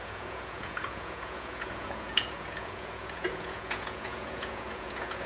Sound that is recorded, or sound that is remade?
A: remade